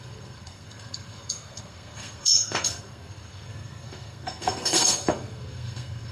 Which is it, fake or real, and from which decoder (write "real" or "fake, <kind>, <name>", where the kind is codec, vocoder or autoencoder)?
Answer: fake, codec, SNAC